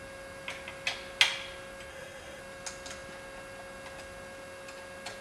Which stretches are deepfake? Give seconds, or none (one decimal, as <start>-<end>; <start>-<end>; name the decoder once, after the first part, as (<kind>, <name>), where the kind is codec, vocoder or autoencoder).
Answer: 1.9-2.4 (codec, SNAC)